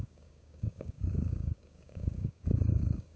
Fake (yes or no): yes